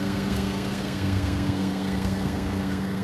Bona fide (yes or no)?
no